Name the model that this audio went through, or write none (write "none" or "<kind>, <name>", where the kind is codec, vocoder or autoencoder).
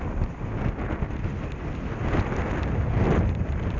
none